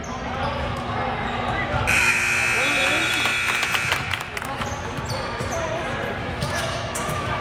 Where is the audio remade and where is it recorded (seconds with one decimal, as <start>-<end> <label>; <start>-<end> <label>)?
0.0-6.2 recorded; 6.2-7.4 remade